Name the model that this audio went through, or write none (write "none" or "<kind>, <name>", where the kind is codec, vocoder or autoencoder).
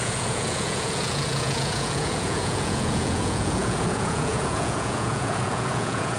vocoder, Vocos